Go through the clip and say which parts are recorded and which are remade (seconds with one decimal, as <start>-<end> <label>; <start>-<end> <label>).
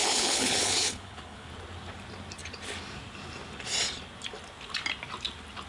0.0-1.5 remade; 1.5-5.7 recorded